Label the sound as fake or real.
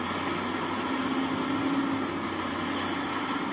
real